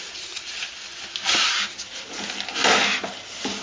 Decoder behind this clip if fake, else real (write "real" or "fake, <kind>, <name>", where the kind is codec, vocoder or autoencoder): real